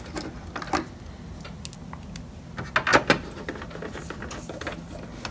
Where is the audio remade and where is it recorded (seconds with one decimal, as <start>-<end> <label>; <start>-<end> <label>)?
0.0-5.3 recorded